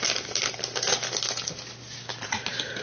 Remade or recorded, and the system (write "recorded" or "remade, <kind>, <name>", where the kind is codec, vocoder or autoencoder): recorded